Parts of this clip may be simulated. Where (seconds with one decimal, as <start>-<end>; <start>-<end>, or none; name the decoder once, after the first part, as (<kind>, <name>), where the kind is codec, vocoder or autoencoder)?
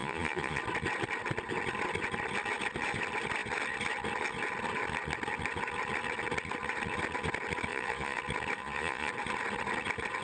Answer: 0.0-0.6 (vocoder, Vocos); 7.7-8.2; 8.6-9.1